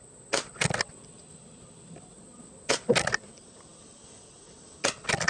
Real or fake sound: real